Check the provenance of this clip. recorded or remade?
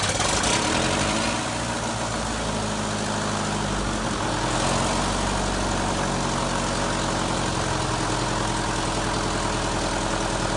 recorded